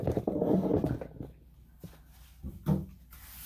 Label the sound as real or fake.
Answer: real